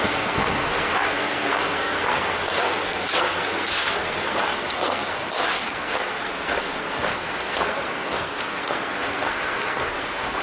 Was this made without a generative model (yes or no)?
no